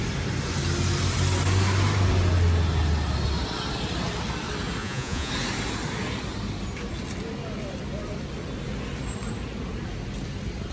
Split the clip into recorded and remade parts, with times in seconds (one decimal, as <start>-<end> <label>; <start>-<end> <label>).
0.0-4.8 recorded; 4.8-5.3 remade; 5.3-10.7 recorded